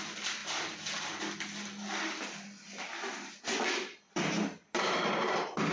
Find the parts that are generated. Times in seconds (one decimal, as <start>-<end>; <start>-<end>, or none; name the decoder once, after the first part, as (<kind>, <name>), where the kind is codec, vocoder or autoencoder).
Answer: none